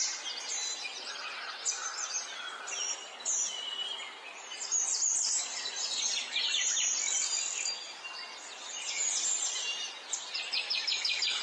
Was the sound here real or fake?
real